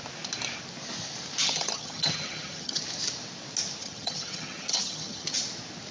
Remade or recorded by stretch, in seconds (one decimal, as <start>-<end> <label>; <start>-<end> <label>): 0.0-1.4 recorded; 1.4-2.8 remade; 2.8-3.8 recorded; 3.8-5.4 remade; 5.4-5.9 recorded